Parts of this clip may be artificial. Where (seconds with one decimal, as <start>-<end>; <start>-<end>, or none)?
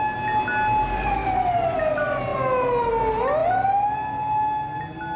none